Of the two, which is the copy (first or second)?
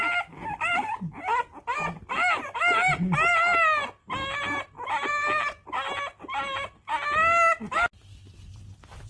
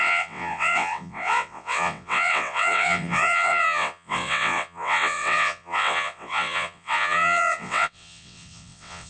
second